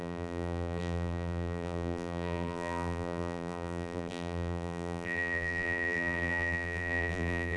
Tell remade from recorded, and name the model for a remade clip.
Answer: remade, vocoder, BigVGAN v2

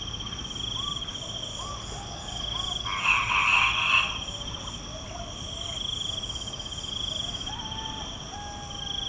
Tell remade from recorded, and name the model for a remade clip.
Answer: recorded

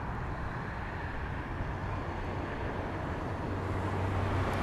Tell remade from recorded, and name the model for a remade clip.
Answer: recorded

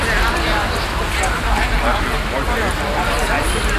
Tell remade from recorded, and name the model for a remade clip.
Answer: recorded